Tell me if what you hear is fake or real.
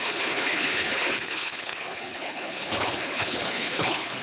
fake